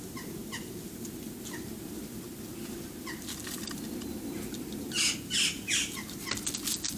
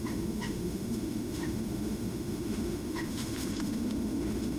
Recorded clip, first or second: first